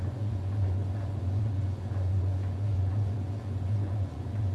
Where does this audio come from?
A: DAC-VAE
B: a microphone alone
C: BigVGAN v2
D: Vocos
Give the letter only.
D